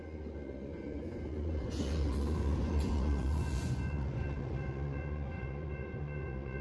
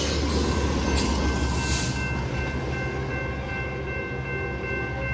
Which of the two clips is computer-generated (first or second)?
first